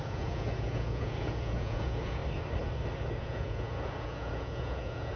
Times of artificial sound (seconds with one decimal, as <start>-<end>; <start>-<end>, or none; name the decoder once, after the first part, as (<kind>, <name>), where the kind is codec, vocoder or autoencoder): 0.0-2.2 (vocoder, Vocos); 3.2-5.2